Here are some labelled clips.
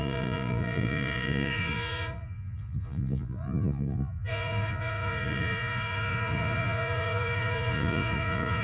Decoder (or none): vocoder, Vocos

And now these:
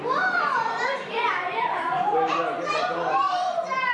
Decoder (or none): vocoder, BigVGAN v2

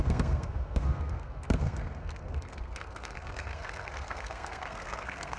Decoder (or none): codec, SNAC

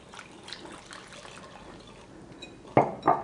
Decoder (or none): none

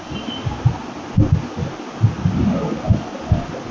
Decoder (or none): none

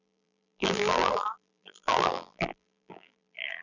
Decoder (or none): vocoder, BigVGAN v2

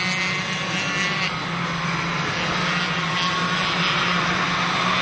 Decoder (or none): none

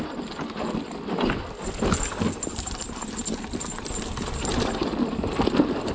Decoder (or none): none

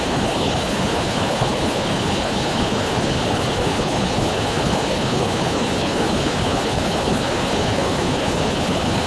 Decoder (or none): codec, HILCodec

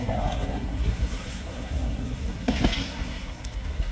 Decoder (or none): codec, SNAC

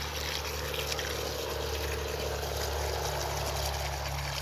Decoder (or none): none